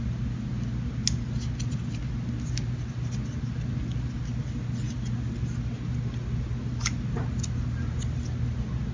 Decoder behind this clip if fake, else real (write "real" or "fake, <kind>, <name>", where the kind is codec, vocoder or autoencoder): real